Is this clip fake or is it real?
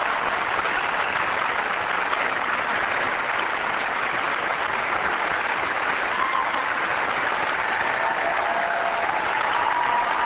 real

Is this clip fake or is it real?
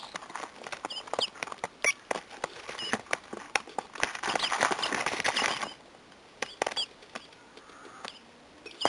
real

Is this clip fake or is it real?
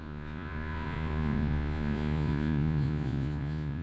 fake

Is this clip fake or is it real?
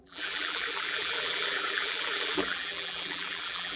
fake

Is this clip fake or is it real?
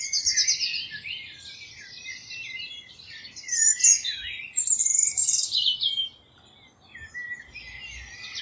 real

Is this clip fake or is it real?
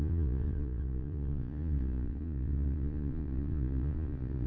fake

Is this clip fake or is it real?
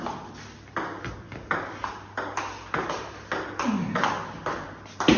real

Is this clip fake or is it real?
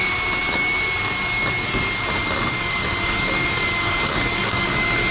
real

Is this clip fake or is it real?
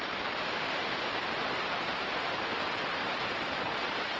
fake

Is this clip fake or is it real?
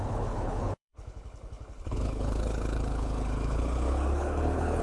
fake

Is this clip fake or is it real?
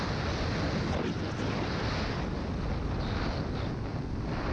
real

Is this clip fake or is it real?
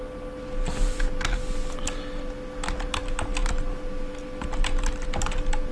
real